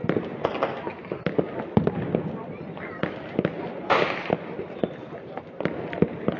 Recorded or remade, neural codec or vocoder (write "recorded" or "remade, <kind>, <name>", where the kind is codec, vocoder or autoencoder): recorded